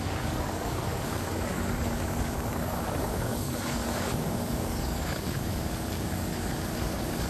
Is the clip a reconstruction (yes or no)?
yes